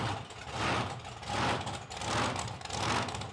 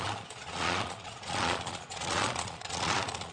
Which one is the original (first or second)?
first